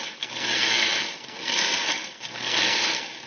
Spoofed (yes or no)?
yes